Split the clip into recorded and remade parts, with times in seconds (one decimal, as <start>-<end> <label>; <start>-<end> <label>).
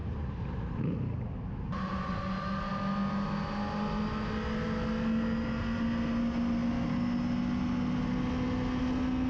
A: 0.0-2.7 remade; 2.7-9.3 recorded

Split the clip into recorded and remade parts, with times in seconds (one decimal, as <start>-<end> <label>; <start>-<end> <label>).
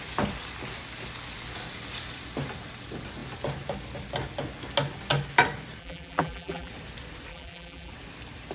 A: 0.0-5.8 recorded; 5.8-6.7 remade; 6.7-7.3 recorded; 7.3-7.9 remade; 7.9-8.5 recorded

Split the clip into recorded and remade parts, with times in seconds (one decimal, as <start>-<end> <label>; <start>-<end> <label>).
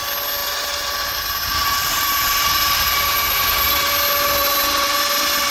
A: 0.0-0.4 recorded; 0.4-3.7 remade; 3.7-5.5 recorded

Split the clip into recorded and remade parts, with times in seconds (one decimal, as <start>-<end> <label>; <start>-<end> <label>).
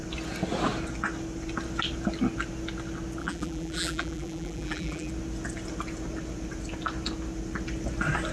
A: 0.0-3.2 recorded; 3.2-5.1 remade; 5.1-8.3 recorded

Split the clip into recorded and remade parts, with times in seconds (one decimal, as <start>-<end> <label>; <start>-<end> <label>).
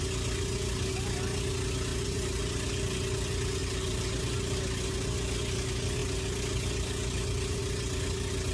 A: 0.0-1.9 recorded; 1.9-2.4 remade; 2.4-3.6 recorded; 3.6-4.1 remade; 4.1-8.5 recorded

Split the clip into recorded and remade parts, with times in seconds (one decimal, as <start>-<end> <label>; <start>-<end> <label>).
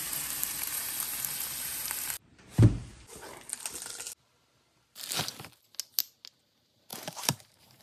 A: 0.0-2.9 remade; 2.9-6.4 recorded; 6.4-7.8 remade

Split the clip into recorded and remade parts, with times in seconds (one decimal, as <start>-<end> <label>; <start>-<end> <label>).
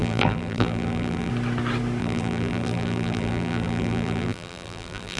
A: 0.0-1.3 remade; 1.3-2.0 recorded; 2.0-5.2 remade